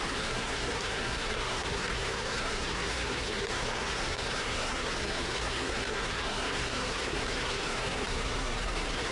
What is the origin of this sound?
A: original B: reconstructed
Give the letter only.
B